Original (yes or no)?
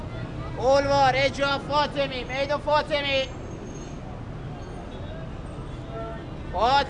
yes